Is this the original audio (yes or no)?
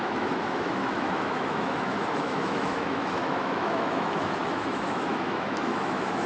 no